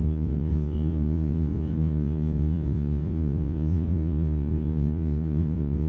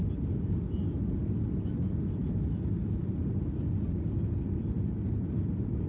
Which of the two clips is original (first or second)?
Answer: second